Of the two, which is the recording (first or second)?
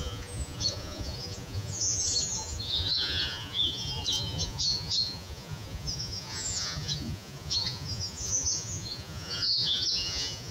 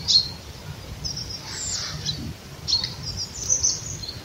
second